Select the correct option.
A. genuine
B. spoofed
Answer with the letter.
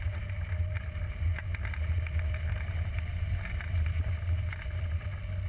A